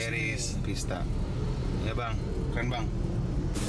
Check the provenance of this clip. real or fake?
real